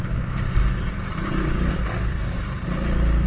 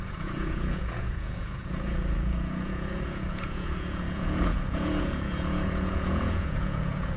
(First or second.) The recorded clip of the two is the first